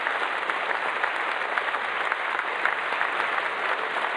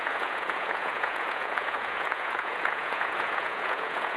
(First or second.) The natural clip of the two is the first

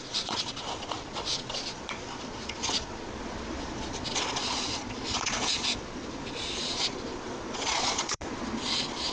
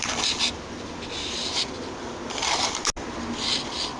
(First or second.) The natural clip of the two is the second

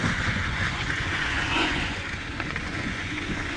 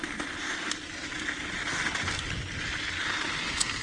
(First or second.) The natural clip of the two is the second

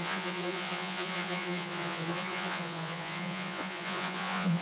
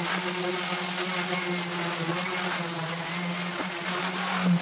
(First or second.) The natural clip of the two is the second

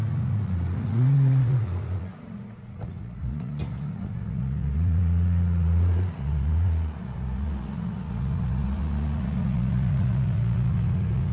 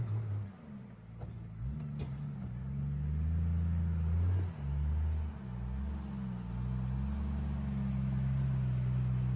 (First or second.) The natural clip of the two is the second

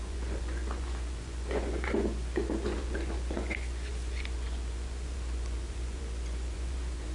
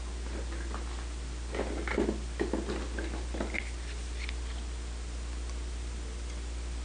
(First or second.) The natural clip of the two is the second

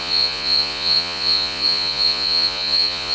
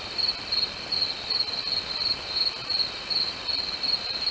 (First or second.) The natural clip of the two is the second